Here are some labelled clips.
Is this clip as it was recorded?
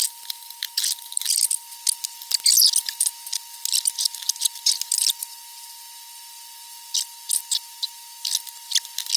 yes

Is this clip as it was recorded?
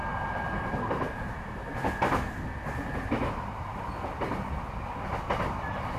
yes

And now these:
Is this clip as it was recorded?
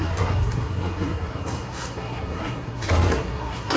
no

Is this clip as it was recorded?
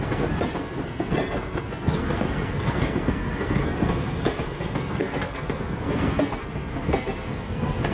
no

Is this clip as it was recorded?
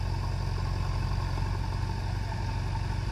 yes